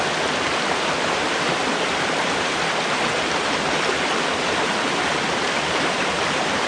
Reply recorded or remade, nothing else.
recorded